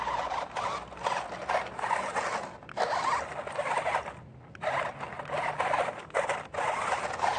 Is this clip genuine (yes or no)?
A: yes